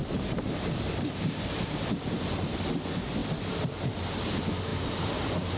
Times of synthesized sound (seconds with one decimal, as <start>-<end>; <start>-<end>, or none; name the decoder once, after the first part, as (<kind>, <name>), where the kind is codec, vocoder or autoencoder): 0.0-2.7 (vocoder, BigVGAN v2)